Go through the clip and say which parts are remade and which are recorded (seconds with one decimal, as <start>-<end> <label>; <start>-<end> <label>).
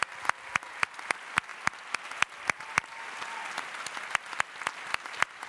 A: 0.0-5.5 recorded